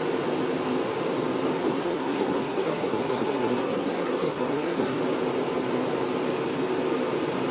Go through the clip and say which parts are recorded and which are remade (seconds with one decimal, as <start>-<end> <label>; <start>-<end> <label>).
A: 0.0-1.6 recorded; 1.6-5.0 remade; 5.0-7.5 recorded